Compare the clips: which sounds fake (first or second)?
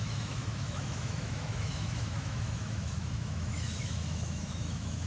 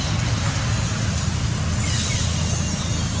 first